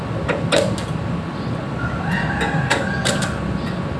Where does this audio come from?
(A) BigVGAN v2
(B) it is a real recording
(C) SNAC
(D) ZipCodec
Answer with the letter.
B